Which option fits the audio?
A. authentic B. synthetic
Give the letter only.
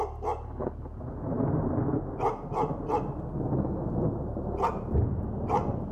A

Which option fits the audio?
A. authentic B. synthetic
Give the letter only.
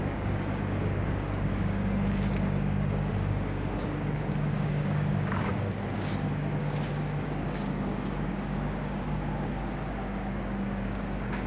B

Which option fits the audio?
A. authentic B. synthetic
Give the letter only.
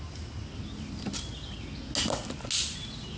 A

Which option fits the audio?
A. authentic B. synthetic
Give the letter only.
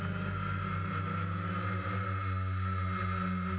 A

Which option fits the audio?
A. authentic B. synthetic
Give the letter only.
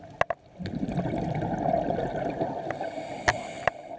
A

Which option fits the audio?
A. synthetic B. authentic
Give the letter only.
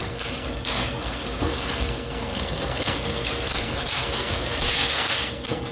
A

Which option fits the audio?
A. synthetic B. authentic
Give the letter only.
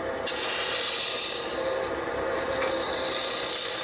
B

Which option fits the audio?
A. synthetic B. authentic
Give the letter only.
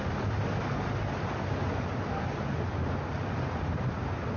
B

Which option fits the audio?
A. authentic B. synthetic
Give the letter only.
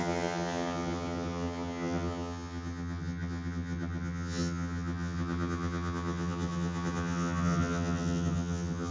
B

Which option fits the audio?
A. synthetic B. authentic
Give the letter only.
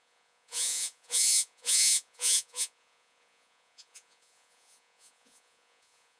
A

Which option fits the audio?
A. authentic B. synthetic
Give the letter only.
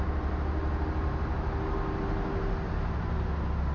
A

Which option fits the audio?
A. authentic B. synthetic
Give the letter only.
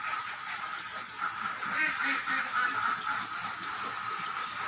A